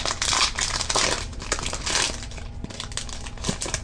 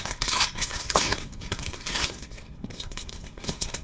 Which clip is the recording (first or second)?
first